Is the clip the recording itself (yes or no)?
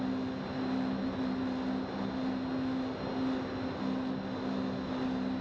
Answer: yes